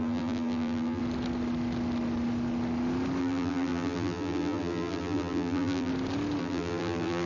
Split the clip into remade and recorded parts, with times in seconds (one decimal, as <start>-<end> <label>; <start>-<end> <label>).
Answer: 0.0-1.0 remade; 1.0-3.2 recorded; 3.2-5.9 remade; 5.9-6.4 recorded; 6.4-7.3 remade